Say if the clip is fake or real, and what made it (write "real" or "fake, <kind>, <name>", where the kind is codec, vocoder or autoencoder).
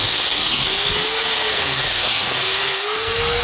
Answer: fake, codec, SNAC